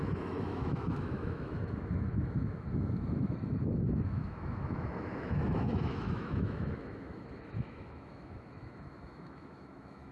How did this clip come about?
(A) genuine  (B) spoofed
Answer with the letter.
B